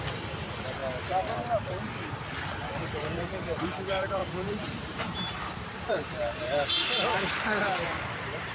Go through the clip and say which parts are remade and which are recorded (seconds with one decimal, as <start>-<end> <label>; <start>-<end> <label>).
0.0-0.8 remade; 0.8-2.8 recorded; 2.8-7.1 remade; 7.1-8.1 recorded; 8.1-8.5 remade